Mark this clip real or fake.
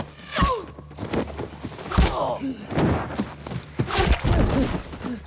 real